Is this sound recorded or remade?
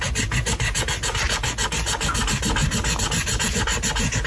recorded